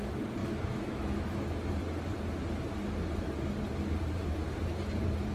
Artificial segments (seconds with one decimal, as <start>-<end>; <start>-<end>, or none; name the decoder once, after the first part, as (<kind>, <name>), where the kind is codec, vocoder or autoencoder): 0.4-1.6 (autoencoder, DAC-VAE)